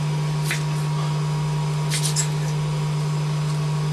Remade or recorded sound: recorded